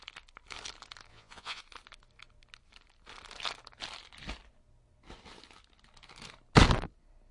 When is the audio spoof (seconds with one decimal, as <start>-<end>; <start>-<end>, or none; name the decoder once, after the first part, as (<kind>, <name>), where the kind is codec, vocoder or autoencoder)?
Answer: 1.1-1.6 (vocoder, Vocos)